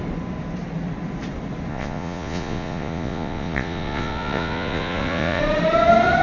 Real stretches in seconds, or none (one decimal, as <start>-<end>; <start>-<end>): 0.0-1.7; 5.4-6.2